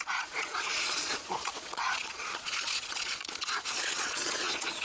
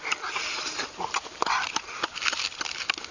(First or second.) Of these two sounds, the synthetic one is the first